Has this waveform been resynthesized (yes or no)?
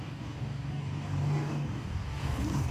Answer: yes